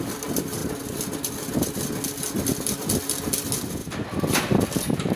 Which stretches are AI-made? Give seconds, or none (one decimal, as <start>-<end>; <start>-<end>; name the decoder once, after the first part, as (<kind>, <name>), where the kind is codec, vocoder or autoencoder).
3.8-5.2 (vocoder, BigVGAN v2)